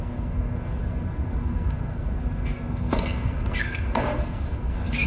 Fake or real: fake